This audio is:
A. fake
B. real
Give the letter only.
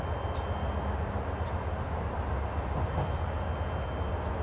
B